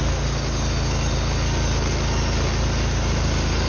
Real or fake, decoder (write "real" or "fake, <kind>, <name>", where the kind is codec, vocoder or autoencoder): real